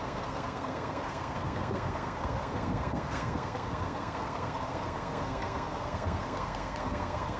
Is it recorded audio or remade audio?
remade